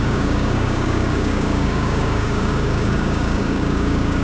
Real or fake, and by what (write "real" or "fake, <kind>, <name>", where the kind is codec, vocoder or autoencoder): fake, codec, DAC